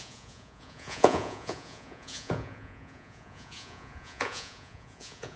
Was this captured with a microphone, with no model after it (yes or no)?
no